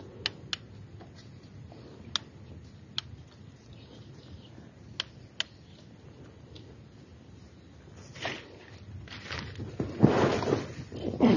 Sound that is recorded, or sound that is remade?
recorded